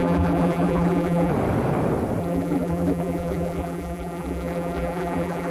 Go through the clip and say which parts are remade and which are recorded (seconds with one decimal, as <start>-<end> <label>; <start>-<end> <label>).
0.0-1.3 remade; 1.3-2.2 recorded; 2.2-5.5 remade